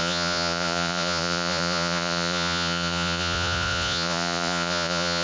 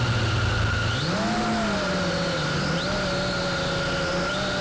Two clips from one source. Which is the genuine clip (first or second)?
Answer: second